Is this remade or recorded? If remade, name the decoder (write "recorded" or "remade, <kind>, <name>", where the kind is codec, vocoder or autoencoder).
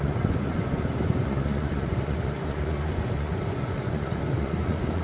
remade, vocoder, Vocos